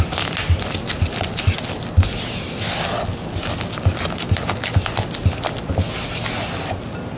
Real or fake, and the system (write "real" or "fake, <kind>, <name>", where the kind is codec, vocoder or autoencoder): real